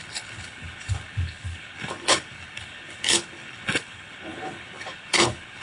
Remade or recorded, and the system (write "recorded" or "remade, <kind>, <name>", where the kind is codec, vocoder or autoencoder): remade, codec, HILCodec